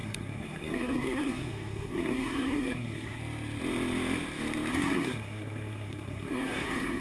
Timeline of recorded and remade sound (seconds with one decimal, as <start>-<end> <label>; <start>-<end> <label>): 0.0-3.2 remade; 3.2-4.7 recorded; 4.7-7.0 remade